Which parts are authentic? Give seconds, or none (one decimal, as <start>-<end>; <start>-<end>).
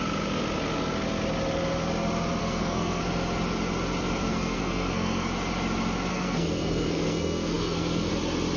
0.0-2.4; 3.0-4.2; 5.3-6.1; 8.1-8.6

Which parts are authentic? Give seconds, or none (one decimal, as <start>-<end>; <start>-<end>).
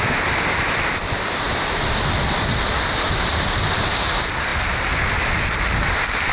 0.0-6.3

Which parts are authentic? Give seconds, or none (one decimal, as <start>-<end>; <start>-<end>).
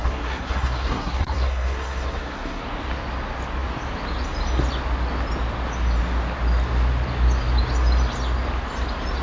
2.6-9.2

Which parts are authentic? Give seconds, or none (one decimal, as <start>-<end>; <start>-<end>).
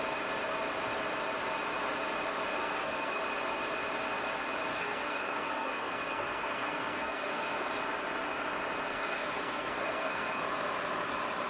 0.0-2.6; 3.2-4.7; 7.7-8.9; 10.4-11.5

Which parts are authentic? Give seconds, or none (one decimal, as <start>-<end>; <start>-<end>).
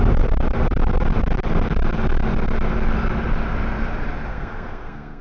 0.0-4.3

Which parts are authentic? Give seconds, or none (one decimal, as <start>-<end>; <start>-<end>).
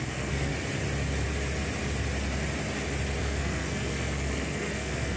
0.5-3.2